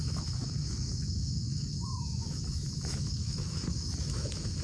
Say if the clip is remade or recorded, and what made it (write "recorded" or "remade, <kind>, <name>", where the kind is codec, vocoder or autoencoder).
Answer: remade, autoencoder, DAC-VAE